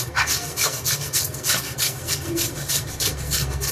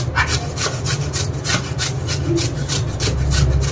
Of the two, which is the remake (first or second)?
first